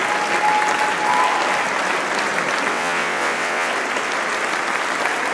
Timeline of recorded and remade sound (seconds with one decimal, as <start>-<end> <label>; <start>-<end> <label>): 0.0-2.7 recorded; 2.7-3.7 remade; 3.7-5.3 recorded